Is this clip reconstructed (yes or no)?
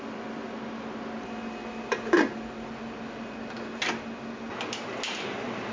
no